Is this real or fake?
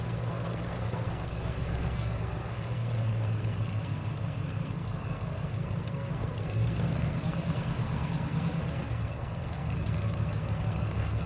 fake